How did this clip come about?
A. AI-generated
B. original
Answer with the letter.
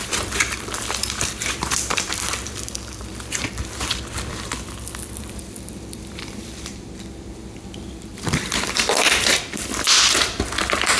A